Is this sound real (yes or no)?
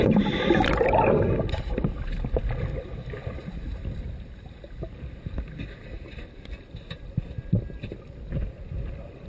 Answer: yes